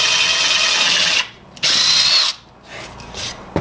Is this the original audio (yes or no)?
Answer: yes